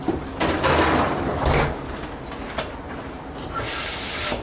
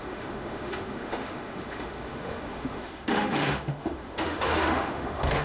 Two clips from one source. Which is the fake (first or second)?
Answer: second